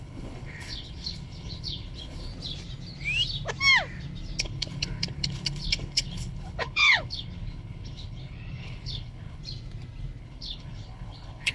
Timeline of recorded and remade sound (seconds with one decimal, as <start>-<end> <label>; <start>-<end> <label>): 0.0-2.3 remade; 2.3-4.4 recorded; 4.4-9.4 remade; 9.4-10.2 recorded; 10.2-11.5 remade